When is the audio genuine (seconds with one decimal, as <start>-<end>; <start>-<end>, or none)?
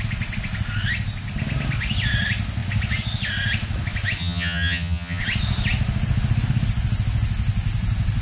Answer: 0.0-4.2; 5.2-8.2